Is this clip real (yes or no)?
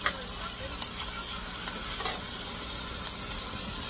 yes